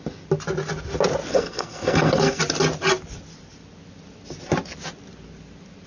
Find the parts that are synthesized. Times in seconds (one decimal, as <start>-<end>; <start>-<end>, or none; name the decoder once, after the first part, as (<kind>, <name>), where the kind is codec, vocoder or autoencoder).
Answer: 1.3-2.4 (codec, SNAC)